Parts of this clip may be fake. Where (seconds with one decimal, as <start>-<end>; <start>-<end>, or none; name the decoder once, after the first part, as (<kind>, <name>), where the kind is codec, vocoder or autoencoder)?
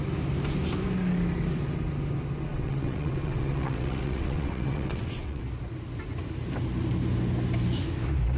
2.5-5.4 (vocoder, WaveNeXt)